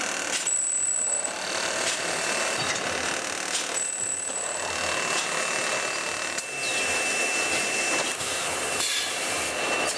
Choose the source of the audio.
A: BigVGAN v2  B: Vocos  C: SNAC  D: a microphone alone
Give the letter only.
D